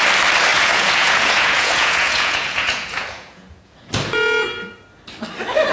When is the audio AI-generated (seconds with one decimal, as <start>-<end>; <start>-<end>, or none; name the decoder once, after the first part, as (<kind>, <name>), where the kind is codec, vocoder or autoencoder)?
0.5-3.9 (vocoder, Vocos)